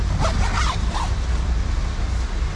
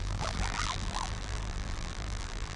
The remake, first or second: second